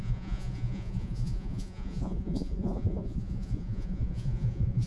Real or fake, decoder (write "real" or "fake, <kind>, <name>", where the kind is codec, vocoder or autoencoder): fake, vocoder, Vocos